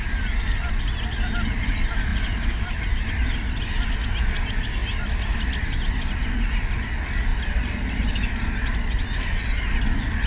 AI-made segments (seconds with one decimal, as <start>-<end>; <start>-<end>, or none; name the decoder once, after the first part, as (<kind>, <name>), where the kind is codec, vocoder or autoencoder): 2.1-3.3 (vocoder, BigVGAN v2); 7.3-8.3